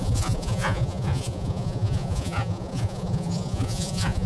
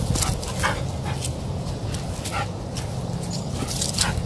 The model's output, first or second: first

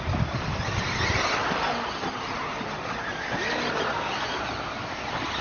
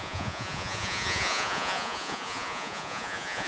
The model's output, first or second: second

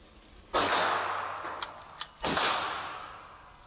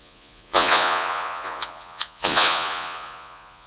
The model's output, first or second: second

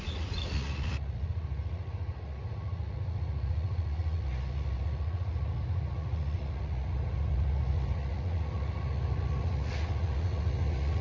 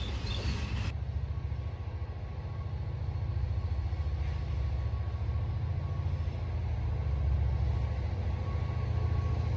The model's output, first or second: first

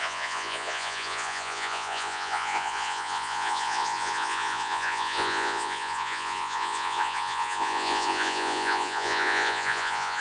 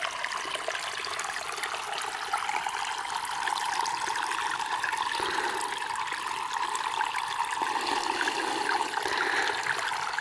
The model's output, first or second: first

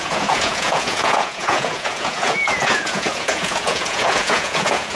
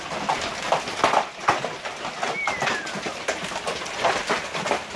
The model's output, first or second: first